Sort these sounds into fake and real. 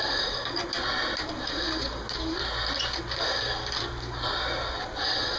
real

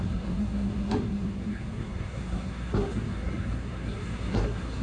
fake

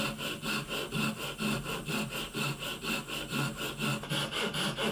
real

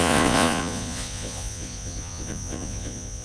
fake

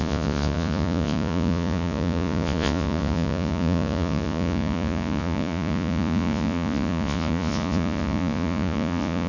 fake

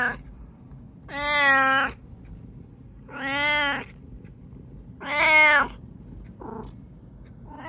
real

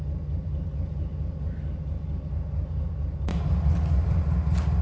real